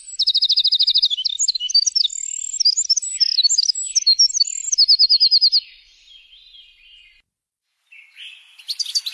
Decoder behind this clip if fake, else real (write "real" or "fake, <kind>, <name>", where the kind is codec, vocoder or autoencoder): real